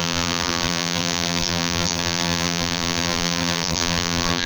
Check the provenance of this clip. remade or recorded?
remade